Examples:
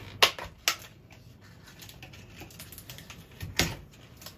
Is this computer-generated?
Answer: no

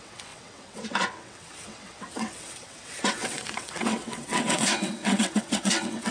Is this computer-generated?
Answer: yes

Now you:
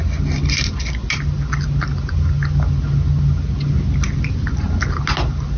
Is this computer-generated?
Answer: no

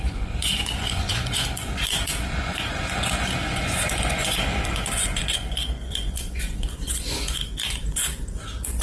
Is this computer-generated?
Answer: yes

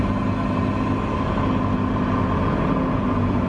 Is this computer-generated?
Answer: no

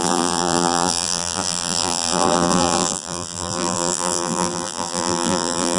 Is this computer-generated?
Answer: yes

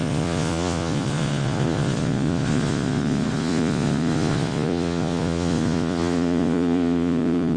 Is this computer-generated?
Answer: yes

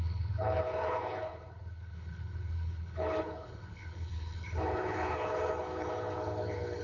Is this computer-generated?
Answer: yes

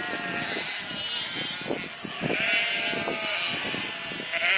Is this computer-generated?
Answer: no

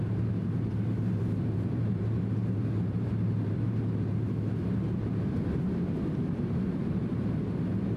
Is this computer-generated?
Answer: yes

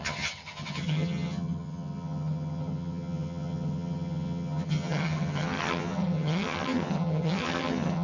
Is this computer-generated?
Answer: yes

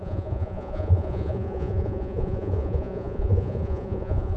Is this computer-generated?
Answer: yes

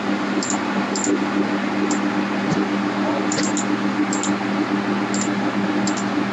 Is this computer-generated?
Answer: no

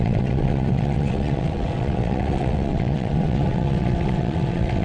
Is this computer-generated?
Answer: yes